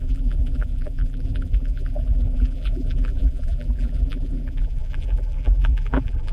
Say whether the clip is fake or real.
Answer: fake